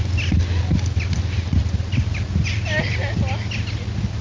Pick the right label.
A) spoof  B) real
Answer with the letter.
A